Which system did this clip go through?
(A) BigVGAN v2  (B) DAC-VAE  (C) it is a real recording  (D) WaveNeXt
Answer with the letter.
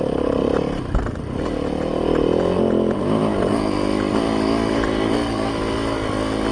C